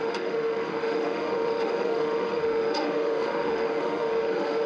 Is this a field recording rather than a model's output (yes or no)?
no